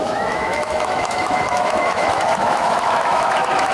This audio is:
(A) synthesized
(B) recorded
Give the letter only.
A